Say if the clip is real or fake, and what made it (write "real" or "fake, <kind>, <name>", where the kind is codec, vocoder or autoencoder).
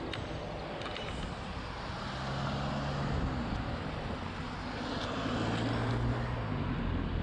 real